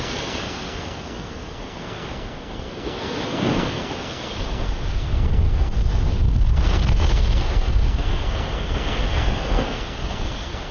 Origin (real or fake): fake